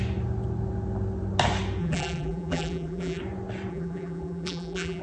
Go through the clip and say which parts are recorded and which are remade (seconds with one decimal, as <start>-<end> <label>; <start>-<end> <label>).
0.0-1.8 recorded; 1.8-3.2 remade; 3.2-3.7 recorded; 3.7-5.0 remade